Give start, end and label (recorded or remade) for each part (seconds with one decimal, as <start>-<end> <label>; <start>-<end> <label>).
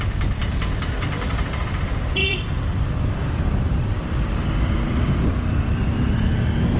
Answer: 0.0-2.2 recorded; 2.2-4.7 remade; 4.7-6.8 recorded